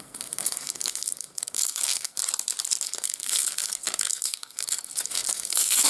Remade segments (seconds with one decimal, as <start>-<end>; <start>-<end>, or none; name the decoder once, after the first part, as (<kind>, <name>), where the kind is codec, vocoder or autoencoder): 0.0-2.2 (codec, SNAC); 2.8-5.9